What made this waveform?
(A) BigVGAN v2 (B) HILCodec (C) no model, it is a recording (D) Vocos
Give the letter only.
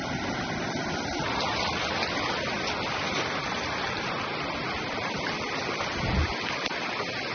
A